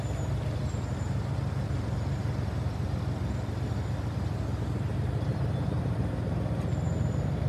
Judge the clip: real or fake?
real